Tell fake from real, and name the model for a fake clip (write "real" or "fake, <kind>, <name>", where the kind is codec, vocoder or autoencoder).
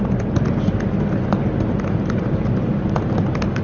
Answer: real